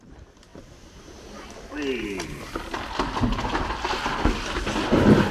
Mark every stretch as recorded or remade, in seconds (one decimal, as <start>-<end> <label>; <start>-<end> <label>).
0.0-5.3 recorded